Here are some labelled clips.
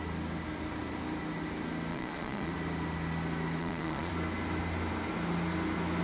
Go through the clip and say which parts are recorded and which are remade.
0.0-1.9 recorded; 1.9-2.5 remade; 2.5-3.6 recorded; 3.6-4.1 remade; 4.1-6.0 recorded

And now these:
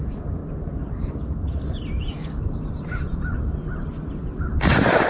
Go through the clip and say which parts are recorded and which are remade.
0.0-0.4 remade; 0.4-2.4 recorded; 2.4-3.9 remade; 3.9-4.6 recorded; 4.6-5.1 remade

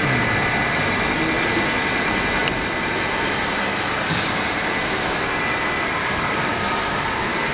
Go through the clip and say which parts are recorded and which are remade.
0.0-6.0 recorded; 6.0-7.5 remade

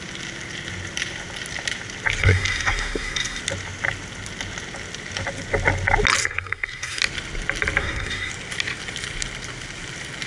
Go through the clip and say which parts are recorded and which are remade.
0.0-2.2 recorded; 2.2-3.4 remade; 3.4-6.2 recorded; 6.2-7.0 remade; 7.0-7.8 recorded; 7.8-8.3 remade; 8.3-10.3 recorded

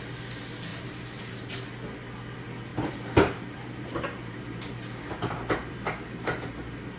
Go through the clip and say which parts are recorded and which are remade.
0.0-0.7 recorded; 0.7-1.5 remade; 1.5-2.7 recorded; 2.7-7.0 remade

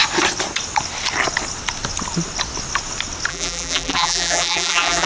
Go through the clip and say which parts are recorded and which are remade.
0.0-3.3 recorded; 3.3-5.1 remade